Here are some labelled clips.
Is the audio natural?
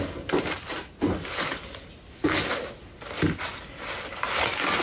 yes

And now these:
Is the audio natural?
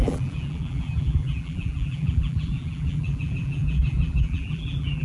no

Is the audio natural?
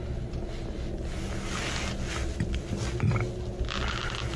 yes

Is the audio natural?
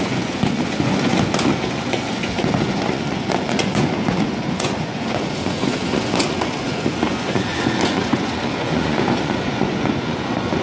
no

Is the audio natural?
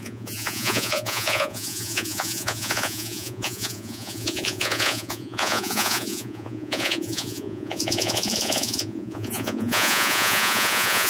no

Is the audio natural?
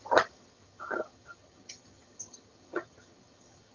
no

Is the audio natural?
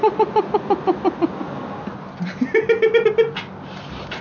yes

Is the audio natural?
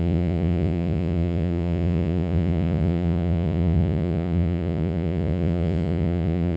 no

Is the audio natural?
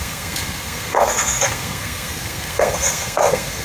no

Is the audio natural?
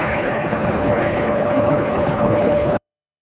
no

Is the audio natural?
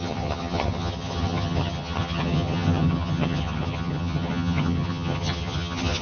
no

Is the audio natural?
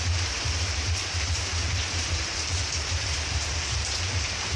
no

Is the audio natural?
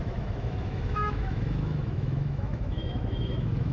no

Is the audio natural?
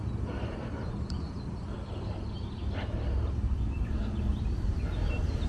yes